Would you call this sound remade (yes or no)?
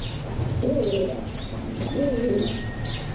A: no